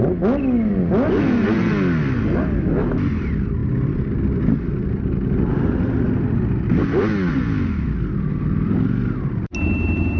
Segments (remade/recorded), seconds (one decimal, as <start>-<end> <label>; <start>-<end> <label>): 0.0-10.2 recorded